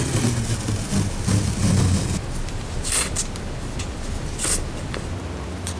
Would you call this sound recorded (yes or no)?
yes